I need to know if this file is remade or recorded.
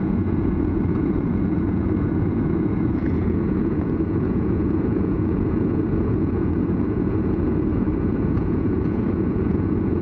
remade